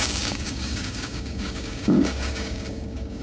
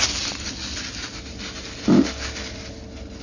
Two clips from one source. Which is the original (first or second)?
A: second